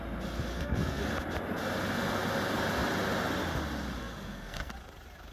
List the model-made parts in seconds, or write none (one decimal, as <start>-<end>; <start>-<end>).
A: 0.5-1.0; 4.0-4.7